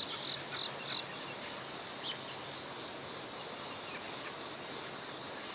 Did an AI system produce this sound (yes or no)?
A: no